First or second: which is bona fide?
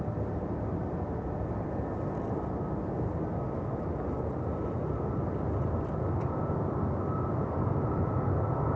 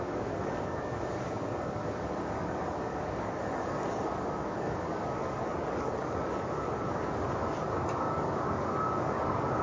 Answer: first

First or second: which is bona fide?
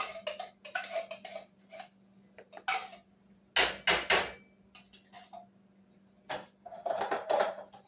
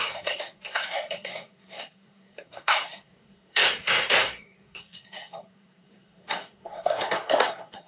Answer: first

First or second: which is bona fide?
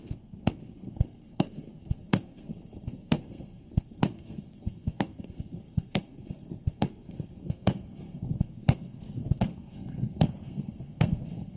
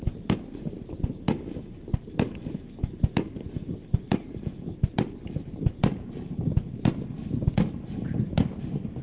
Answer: second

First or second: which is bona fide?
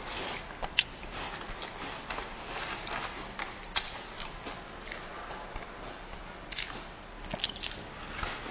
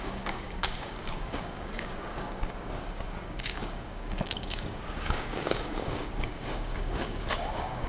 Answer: first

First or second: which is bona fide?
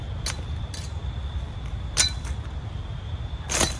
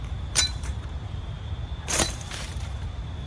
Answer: first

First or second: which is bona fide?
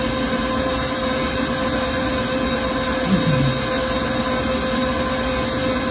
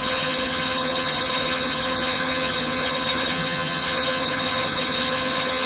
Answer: first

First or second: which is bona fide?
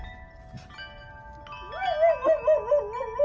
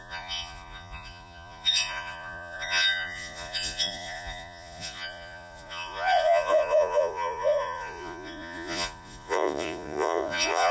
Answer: first